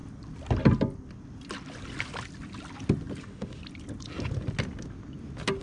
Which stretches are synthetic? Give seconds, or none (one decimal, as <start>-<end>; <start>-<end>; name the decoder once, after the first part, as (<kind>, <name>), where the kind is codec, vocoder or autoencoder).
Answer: 3.2-3.6 (autoencoder, DAC-VAE)